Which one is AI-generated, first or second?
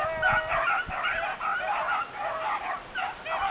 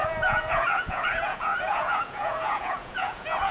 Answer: second